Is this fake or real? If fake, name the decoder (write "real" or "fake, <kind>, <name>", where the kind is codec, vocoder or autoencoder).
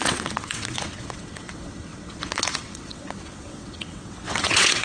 fake, vocoder, WaveNeXt